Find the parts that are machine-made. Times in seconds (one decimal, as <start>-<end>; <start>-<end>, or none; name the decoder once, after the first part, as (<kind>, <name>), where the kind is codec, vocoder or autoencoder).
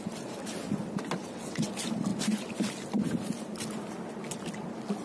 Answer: 1.2-1.7 (vocoder, WaveNeXt)